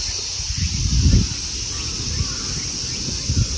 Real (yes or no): yes